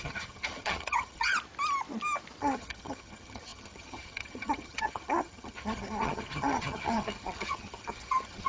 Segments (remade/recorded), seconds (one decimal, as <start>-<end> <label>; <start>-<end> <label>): 0.0-1.3 remade; 1.3-2.4 recorded; 2.4-8.5 remade